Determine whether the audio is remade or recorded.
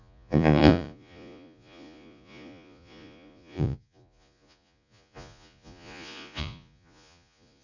remade